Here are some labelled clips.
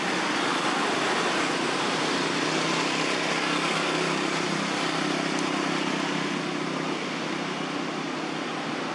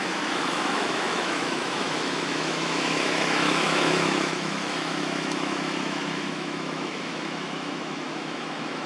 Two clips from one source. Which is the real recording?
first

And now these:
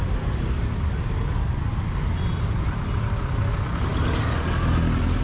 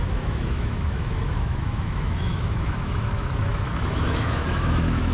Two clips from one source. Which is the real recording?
first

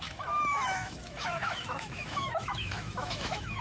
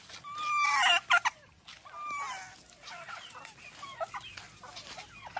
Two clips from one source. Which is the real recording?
second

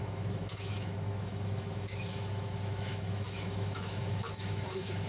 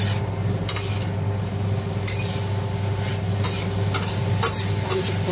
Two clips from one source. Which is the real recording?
second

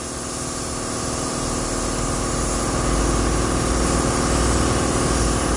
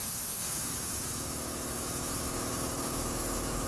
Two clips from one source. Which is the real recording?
first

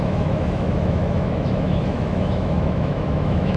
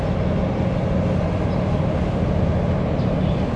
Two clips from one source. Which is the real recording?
second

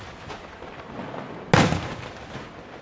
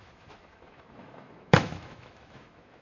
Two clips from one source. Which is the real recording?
first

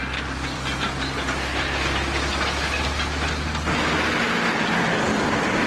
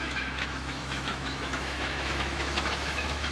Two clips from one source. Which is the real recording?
first